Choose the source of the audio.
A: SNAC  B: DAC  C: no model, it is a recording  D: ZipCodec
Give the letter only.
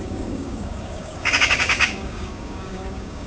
B